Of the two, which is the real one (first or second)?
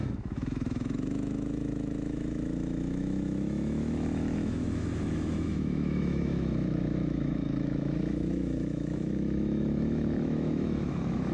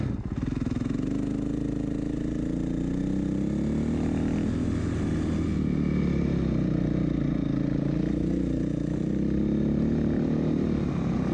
second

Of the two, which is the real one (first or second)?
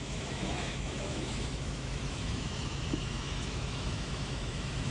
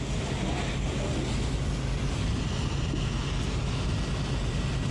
second